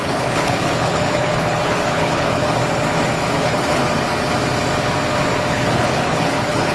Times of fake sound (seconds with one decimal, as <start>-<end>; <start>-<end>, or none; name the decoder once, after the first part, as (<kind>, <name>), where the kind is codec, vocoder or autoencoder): 0.0-2.6 (codec, HILCodec); 3.4-3.8; 5.5-6.7